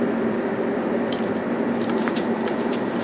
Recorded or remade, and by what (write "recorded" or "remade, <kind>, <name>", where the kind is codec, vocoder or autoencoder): remade, vocoder, BigVGAN v2